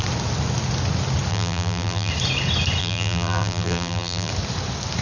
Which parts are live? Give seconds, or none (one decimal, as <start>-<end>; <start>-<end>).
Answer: 0.0-1.3; 2.1-2.8; 4.3-5.0